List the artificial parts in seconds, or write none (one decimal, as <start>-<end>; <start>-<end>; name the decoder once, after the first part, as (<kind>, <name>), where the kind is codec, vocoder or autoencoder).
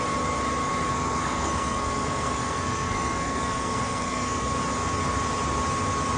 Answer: 0.9-4.6 (codec, SNAC)